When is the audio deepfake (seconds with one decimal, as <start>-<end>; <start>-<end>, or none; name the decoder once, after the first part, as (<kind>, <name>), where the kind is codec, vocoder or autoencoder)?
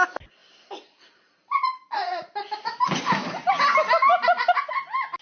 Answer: none